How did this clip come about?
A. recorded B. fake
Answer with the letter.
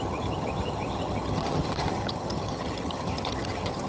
B